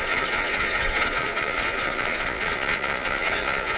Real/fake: fake